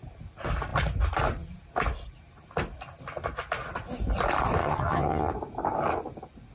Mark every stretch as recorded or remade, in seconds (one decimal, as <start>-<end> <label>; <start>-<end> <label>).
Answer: 0.0-4.6 recorded; 4.6-5.3 remade; 5.3-6.5 recorded